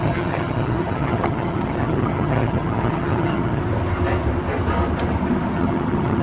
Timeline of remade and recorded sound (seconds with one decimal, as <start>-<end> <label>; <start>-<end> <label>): 0.0-3.6 remade; 3.6-5.5 recorded; 5.5-6.2 remade